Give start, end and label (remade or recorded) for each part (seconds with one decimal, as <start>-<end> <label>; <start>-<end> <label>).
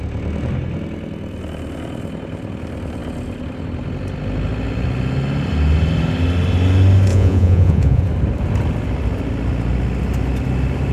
0.0-7.1 recorded; 7.1-8.0 remade; 8.0-10.9 recorded